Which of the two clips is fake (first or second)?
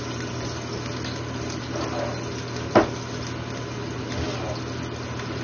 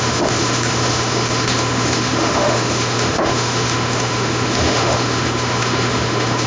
second